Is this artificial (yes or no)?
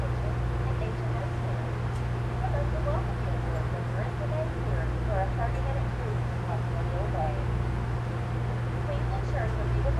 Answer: no